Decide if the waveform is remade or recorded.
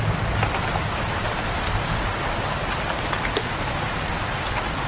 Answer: recorded